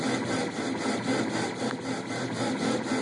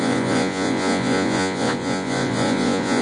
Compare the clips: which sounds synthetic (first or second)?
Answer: second